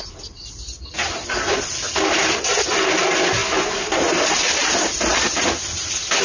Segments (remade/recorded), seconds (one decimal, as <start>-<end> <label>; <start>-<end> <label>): 0.0-6.2 recorded